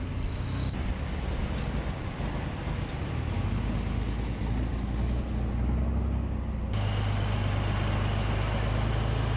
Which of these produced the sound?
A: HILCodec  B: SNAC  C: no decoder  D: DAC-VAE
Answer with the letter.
C